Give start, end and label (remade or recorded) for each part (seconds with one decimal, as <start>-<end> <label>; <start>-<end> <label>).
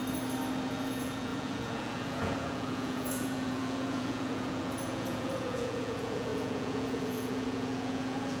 0.0-0.7 recorded; 0.7-8.4 remade